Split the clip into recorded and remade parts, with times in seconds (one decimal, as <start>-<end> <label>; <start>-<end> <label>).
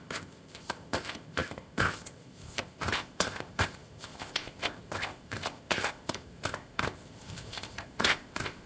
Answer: 0.0-8.7 remade